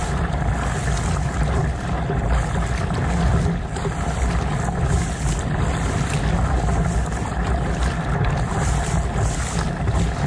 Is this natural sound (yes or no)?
yes